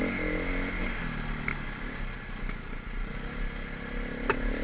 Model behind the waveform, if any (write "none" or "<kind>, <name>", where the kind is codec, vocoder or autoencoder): none